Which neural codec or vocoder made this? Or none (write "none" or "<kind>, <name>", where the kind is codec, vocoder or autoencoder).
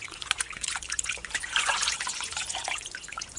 vocoder, Vocos